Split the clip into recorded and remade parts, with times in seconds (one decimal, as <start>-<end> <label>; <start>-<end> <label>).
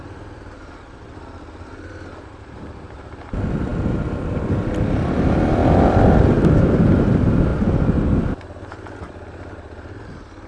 0.0-5.6 remade; 5.6-6.6 recorded; 6.6-10.5 remade